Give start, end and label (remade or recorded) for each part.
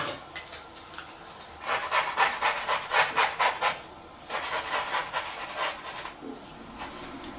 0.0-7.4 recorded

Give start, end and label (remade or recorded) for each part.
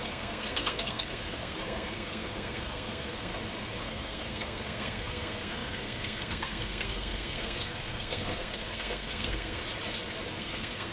0.0-3.3 remade; 3.3-3.8 recorded; 3.8-9.6 remade; 9.6-10.4 recorded; 10.4-10.9 remade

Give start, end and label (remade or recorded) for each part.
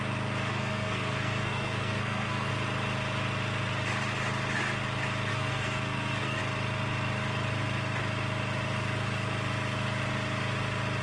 0.0-0.5 recorded; 0.5-2.5 remade; 2.5-5.3 recorded; 5.3-6.4 remade; 6.4-11.0 recorded